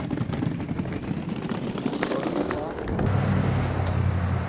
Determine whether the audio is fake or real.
real